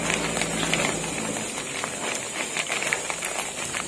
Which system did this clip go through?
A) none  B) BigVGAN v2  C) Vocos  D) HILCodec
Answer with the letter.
B